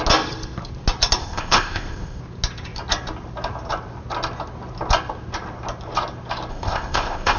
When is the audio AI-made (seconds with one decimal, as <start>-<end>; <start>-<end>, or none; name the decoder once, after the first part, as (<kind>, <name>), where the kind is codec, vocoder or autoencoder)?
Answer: 1.2-2.2 (codec, ZipCodec); 6.5-7.4